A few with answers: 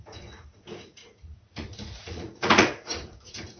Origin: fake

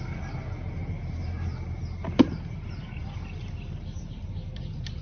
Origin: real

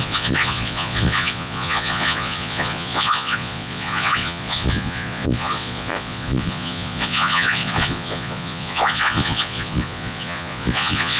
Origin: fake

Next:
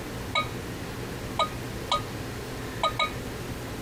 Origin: real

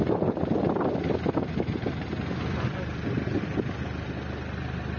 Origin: real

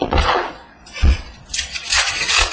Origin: fake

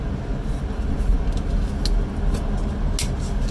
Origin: real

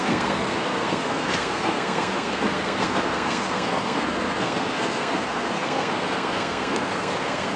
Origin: fake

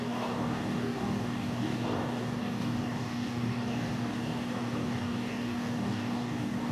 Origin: fake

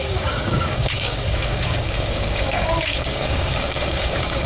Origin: fake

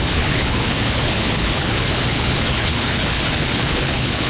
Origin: fake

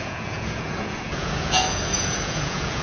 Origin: fake